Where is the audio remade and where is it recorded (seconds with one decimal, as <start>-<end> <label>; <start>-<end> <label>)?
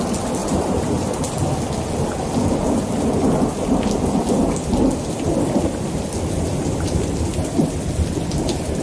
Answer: 0.0-0.4 recorded; 0.4-1.2 remade; 1.2-6.5 recorded; 6.5-7.3 remade; 7.3-8.8 recorded